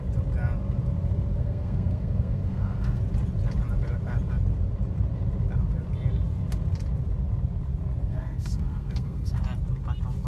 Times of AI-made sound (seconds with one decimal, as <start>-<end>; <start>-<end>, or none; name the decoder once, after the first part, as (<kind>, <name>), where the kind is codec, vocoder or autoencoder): 1.4-3.0 (codec, SNAC); 8.0-9.4